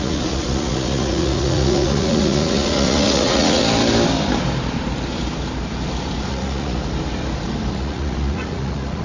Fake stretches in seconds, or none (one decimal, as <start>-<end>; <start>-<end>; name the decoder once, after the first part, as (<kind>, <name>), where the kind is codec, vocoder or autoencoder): 0.0-3.6 (vocoder, Vocos); 6.3-6.8; 7.7-9.0